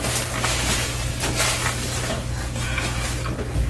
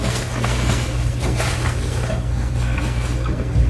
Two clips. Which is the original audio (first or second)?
first